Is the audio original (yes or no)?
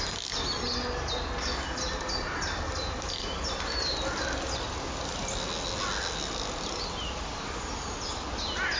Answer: yes